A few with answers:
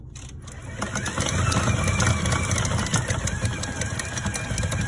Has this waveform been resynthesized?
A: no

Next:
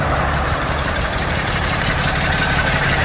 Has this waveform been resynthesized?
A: yes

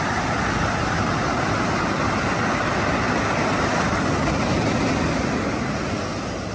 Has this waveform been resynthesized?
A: no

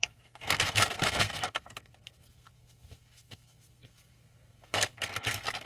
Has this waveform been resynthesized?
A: yes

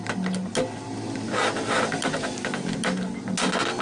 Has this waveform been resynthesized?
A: no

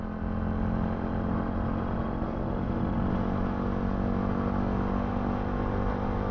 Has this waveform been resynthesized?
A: no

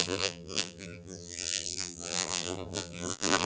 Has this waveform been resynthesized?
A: yes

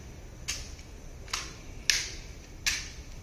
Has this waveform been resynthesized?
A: no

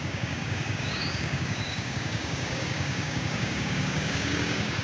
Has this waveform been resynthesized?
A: yes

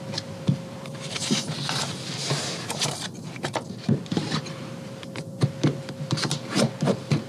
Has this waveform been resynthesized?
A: yes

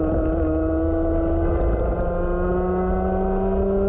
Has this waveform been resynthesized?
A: no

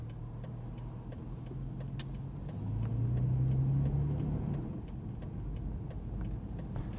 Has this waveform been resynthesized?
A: no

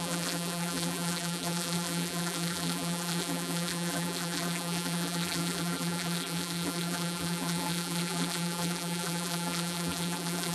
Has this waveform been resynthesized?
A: yes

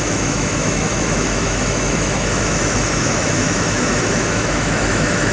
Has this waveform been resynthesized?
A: yes